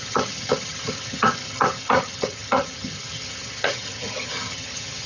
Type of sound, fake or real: fake